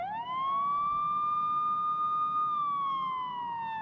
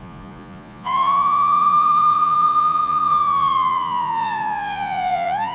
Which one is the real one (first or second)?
first